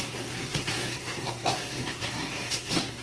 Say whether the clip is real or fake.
fake